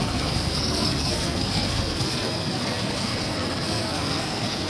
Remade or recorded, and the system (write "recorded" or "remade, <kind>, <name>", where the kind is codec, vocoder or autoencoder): remade, codec, SNAC